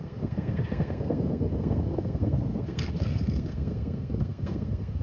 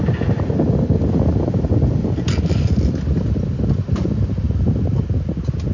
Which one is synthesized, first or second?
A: first